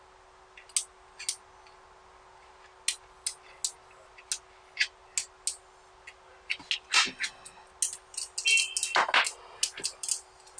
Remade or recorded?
recorded